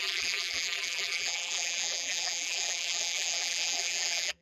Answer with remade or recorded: remade